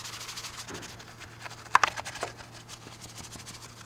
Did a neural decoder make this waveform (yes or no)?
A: no